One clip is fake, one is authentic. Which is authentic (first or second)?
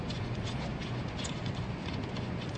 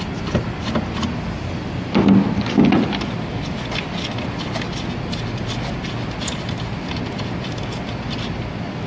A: second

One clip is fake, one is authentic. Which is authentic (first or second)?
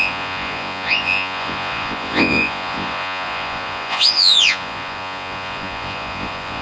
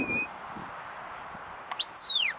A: second